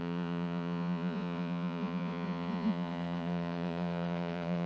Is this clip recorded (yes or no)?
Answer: no